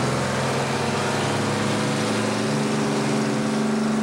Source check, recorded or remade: recorded